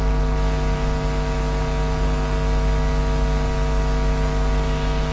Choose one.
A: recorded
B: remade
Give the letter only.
A